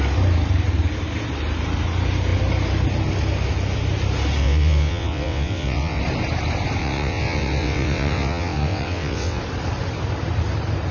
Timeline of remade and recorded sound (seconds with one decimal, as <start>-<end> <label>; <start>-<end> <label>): 0.0-4.4 recorded; 4.4-6.0 remade; 6.0-6.8 recorded; 6.8-9.4 remade; 9.4-10.9 recorded